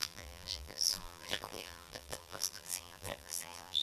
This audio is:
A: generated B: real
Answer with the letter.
A